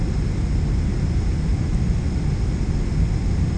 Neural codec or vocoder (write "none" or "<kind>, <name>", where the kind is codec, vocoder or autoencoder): none